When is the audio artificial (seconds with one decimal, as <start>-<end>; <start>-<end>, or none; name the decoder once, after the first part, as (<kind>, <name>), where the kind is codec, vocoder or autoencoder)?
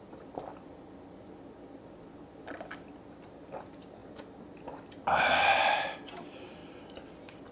0.0-4.0 (vocoder, BigVGAN v2); 4.9-6.6; 7.1-7.5